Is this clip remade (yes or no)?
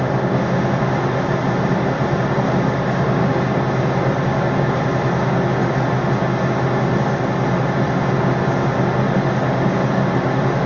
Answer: no